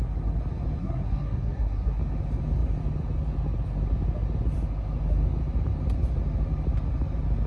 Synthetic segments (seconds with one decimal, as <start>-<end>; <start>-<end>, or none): 0.8-2.0